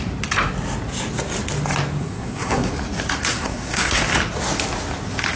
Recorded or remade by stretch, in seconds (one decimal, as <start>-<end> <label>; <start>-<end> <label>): 0.0-2.0 recorded; 2.0-2.7 remade; 2.7-3.3 recorded; 3.3-4.0 remade; 4.0-5.4 recorded